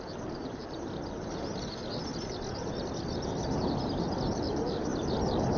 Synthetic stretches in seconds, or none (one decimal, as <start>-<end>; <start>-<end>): none